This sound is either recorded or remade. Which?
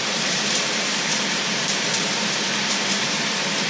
remade